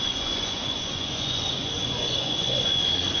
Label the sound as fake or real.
fake